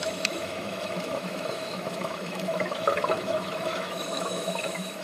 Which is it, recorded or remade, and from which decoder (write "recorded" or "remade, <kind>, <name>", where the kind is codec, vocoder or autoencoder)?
remade, autoencoder, DAC-VAE